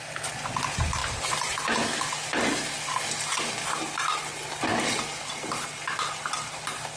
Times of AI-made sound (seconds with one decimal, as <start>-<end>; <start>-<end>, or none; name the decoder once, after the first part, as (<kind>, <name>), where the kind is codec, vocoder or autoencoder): none